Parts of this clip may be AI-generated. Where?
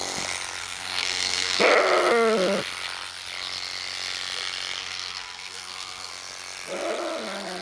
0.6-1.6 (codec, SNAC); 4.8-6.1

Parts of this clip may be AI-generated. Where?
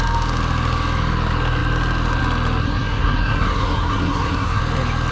2.6-4.6 (codec, SNAC)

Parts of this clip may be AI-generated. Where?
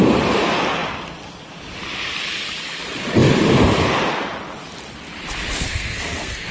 5.7-6.5 (codec, SNAC)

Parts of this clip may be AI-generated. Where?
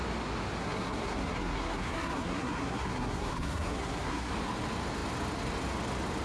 0.6-4.3 (codec, SNAC)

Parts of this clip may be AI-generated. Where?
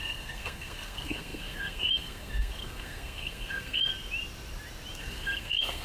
0.0-3.9 (codec, SNAC); 5.0-5.8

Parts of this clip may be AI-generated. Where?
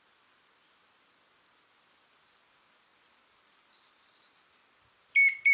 none